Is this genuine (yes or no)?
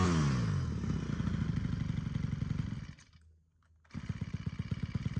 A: yes